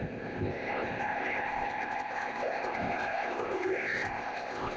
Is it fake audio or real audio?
fake